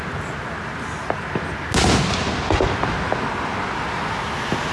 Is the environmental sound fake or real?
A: real